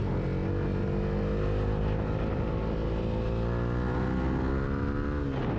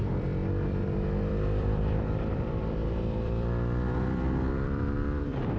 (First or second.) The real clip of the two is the first